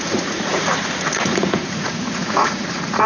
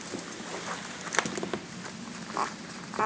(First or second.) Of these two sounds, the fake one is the first